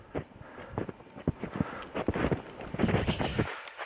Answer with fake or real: real